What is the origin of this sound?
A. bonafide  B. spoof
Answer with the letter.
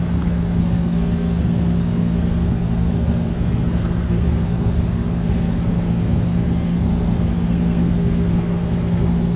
B